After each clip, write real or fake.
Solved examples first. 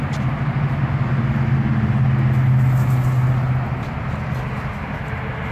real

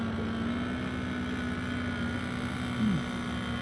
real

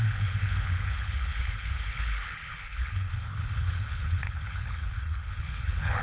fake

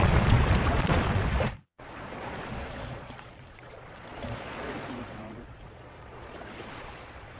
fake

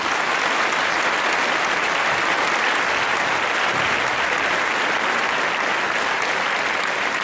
real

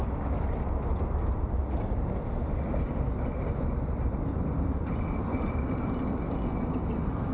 real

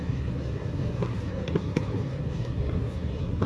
fake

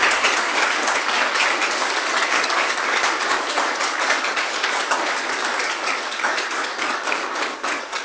fake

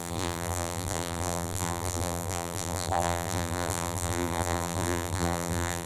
fake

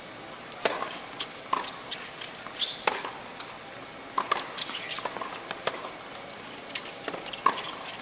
real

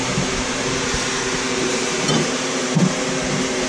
fake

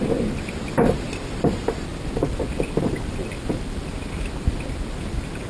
real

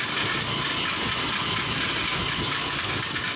real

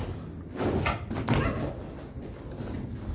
real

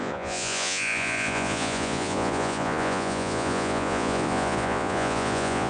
fake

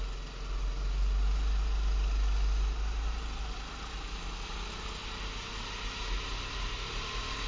real